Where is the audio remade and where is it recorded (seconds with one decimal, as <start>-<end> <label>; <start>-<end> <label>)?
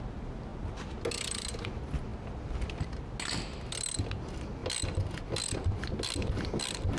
0.0-7.0 recorded